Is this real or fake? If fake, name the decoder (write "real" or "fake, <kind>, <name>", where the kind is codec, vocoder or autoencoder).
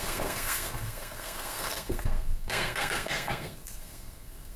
fake, codec, SNAC